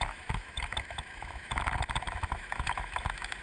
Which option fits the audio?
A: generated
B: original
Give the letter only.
A